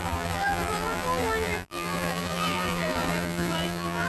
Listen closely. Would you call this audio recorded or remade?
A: remade